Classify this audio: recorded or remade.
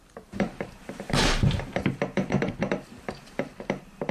remade